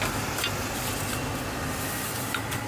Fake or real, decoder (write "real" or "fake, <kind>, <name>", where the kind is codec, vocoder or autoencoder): real